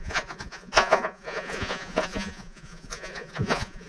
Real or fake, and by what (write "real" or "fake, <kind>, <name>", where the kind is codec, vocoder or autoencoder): fake, vocoder, Vocos